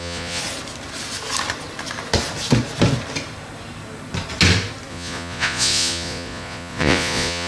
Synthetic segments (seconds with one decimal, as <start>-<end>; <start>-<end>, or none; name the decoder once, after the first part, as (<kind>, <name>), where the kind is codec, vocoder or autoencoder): 0.0-0.4 (vocoder, Vocos); 4.9-7.5